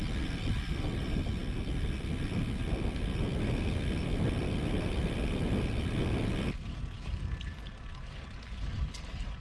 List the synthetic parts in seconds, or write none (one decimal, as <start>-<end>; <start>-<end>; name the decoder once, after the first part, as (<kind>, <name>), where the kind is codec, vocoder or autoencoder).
none